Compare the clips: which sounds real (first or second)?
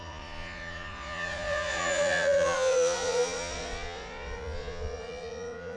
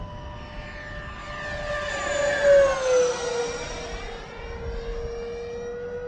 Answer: second